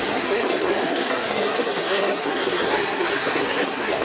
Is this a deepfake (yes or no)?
yes